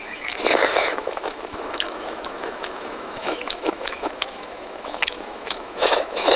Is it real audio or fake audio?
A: fake